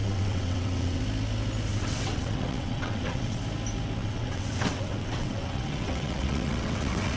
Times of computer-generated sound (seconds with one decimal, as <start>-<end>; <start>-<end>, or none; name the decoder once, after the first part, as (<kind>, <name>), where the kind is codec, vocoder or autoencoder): 0.0-1.0 (vocoder, WaveNeXt); 1.7-3.4; 4.0-7.2